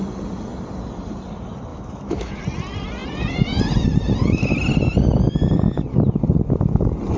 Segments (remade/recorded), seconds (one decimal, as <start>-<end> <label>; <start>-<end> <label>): 0.0-1.7 recorded; 1.7-2.4 remade; 2.4-7.2 recorded